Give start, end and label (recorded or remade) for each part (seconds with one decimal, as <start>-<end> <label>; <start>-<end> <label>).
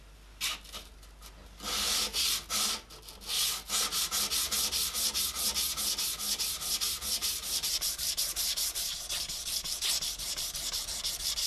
0.0-7.2 recorded; 7.2-10.9 remade; 10.9-11.5 recorded